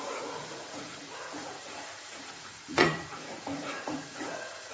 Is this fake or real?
fake